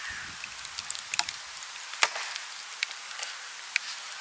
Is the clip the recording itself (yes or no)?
yes